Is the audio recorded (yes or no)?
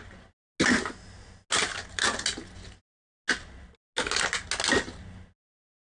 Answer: yes